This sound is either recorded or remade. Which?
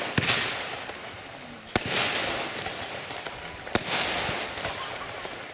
recorded